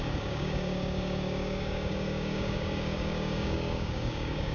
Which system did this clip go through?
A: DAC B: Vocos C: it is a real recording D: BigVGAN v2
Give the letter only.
A